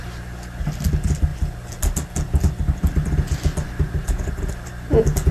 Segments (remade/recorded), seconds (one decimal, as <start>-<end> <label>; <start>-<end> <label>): 0.0-5.3 recorded